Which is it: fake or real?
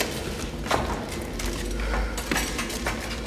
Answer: real